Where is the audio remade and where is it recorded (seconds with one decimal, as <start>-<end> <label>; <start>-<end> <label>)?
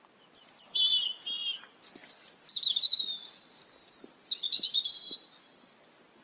0.0-6.2 recorded